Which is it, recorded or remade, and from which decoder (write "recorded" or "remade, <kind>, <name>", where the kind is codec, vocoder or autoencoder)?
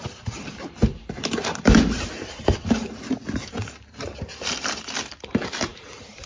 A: remade, vocoder, BigVGAN v2